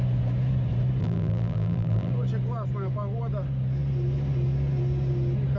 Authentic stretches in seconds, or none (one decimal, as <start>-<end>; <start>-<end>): 0.0-1.0; 2.1-5.6